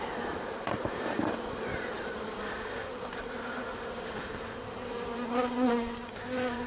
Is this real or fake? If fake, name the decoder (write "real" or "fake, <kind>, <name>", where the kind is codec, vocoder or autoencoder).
fake, vocoder, BigVGAN v2